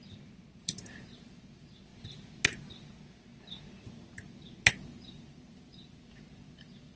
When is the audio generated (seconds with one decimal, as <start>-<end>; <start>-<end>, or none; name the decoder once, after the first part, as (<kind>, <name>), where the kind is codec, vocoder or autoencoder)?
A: 0.0-1.9 (vocoder, BigVGAN v2); 4.7-7.0